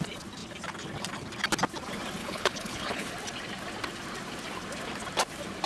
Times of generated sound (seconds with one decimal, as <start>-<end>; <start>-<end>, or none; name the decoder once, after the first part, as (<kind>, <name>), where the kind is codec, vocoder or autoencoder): 2.2-3.1 (codec, HILCodec)